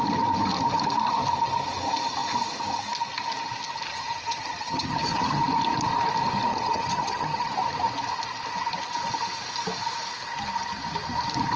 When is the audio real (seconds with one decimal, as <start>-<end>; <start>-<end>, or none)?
0.0-3.9; 5.4-6.5; 7.5-11.6